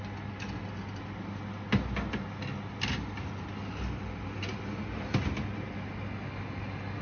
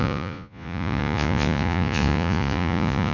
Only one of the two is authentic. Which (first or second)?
first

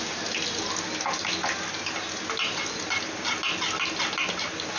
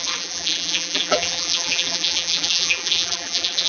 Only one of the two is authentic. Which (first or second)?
first